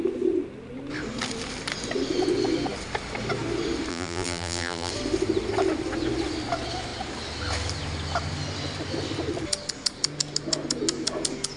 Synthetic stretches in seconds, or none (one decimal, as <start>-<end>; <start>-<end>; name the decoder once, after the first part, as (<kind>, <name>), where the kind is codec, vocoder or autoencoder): 3.9-4.9 (vocoder, BigVGAN v2)